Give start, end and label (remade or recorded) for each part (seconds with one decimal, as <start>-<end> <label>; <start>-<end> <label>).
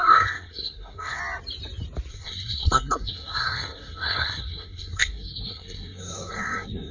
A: 0.0-1.2 remade; 1.2-2.1 recorded; 2.1-6.9 remade